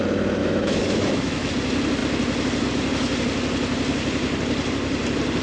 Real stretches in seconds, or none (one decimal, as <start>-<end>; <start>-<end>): 0.0-0.4; 1.5-5.4